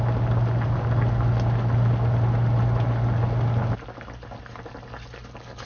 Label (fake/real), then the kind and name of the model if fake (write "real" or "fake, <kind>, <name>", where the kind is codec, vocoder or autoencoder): real